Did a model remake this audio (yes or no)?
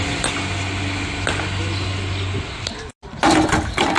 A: no